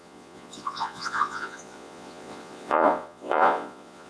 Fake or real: fake